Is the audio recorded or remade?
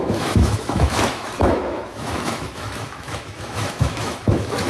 remade